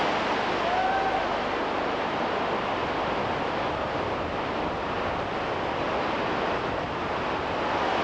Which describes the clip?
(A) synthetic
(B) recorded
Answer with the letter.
B